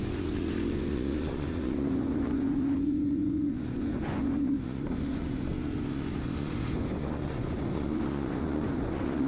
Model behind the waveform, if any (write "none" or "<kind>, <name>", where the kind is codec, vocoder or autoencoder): vocoder, Vocos